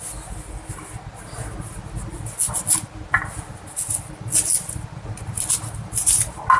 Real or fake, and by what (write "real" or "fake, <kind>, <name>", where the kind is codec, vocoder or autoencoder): real